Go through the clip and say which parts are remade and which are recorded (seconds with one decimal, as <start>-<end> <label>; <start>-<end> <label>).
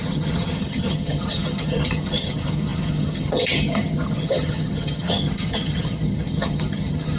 0.0-7.2 remade